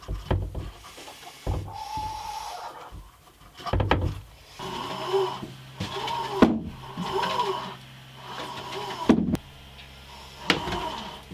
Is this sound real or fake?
real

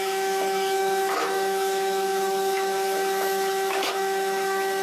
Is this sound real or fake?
fake